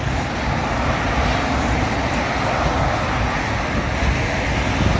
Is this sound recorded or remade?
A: recorded